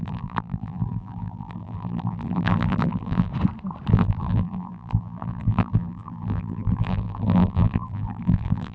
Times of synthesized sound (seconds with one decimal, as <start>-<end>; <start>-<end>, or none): 0.0-3.3; 3.9-8.7